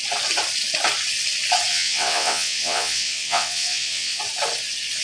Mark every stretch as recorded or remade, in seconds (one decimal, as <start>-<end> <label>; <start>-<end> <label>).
0.0-1.7 recorded; 1.7-4.2 remade; 4.2-5.0 recorded